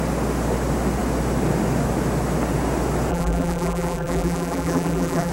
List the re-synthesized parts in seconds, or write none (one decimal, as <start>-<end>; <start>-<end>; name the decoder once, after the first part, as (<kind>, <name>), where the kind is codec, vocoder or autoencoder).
3.1-5.3 (vocoder, BigVGAN v2)